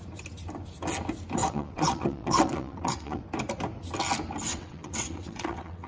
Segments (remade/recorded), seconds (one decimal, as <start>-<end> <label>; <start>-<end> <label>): 0.0-1.4 recorded; 1.4-3.2 remade; 3.2-4.5 recorded; 4.5-5.9 remade